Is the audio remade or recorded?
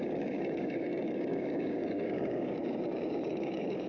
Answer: remade